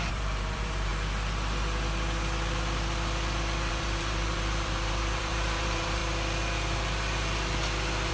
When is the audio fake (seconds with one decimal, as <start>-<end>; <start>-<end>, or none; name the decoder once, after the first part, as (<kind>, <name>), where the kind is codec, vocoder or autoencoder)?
0.0-0.9 (vocoder, BigVGAN v2); 3.7-6.0